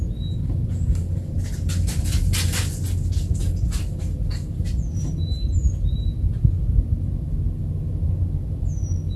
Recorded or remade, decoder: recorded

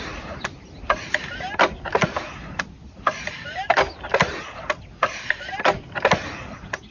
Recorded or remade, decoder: recorded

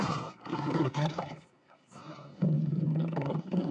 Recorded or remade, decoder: remade, codec, SNAC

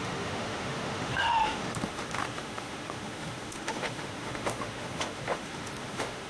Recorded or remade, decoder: remade, autoencoder, DAC-VAE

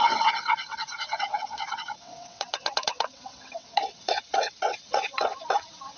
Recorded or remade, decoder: remade, vocoder, WaveNeXt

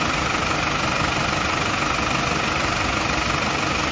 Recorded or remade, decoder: recorded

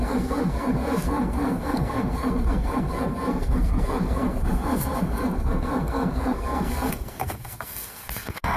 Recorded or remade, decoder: remade, codec, SNAC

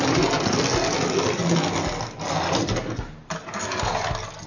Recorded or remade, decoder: recorded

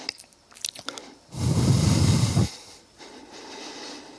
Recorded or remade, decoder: recorded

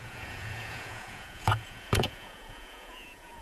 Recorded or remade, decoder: remade, vocoder, Vocos